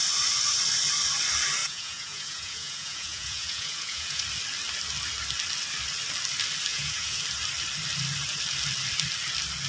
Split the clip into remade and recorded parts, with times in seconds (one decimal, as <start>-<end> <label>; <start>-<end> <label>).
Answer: 0.0-1.6 recorded; 1.6-4.2 remade; 4.2-6.7 recorded; 6.7-7.2 remade; 7.2-9.7 recorded